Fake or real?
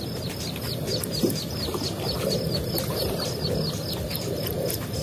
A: real